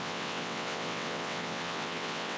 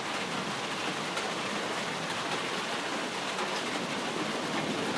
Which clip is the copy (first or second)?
first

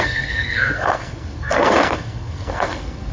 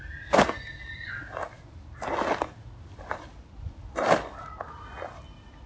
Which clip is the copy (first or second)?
first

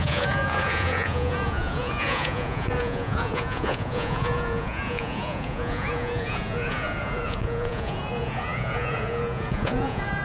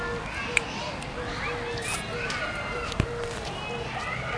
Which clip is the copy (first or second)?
first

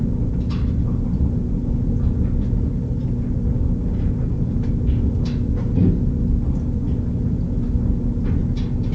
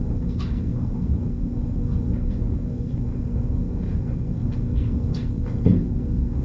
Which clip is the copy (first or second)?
second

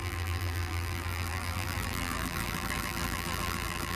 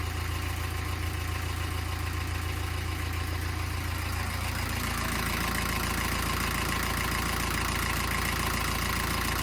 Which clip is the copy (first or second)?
first